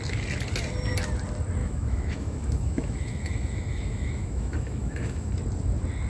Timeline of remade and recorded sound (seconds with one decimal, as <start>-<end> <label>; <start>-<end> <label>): 0.0-1.6 recorded; 1.6-5.3 remade; 5.3-6.1 recorded